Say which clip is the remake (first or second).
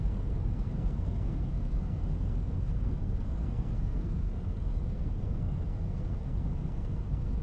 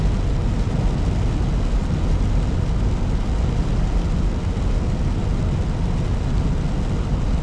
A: first